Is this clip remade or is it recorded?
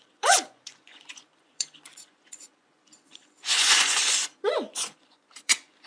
remade